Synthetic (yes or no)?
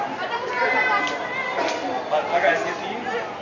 no